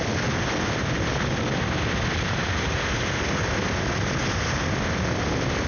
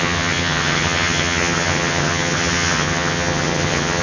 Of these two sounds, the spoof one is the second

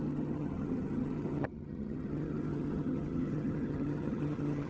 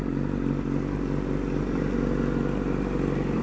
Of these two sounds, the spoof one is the first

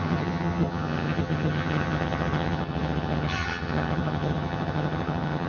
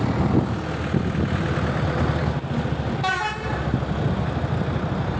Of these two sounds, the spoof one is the first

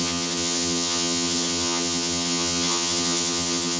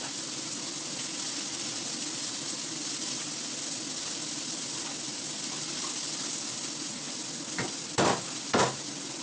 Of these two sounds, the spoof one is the first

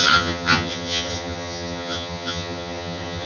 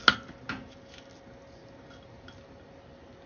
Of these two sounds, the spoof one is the first